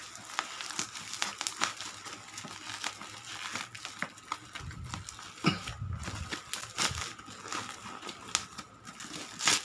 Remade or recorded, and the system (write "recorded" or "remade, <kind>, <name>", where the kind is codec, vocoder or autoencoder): recorded